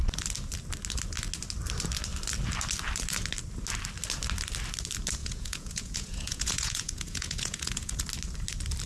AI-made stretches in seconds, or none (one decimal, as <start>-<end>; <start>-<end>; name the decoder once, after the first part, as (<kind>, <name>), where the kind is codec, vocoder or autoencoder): 5.2-8.1 (vocoder, Vocos)